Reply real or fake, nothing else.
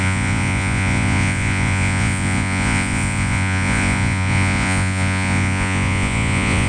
fake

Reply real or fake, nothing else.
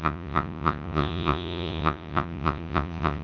fake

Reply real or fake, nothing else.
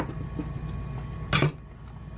real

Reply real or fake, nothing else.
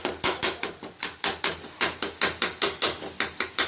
real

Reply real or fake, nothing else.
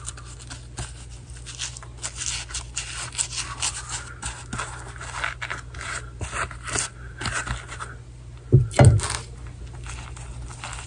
real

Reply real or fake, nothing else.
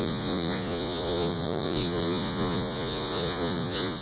fake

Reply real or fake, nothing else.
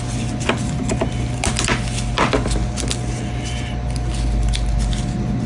real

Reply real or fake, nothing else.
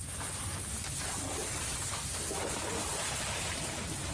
real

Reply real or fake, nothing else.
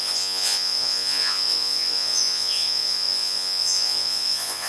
fake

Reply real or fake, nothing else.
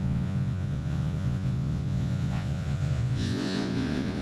fake